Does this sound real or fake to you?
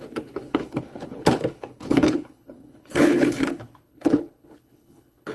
fake